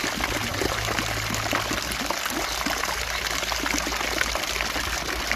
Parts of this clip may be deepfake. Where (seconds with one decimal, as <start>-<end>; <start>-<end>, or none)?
none